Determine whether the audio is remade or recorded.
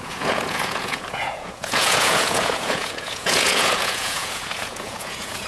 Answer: remade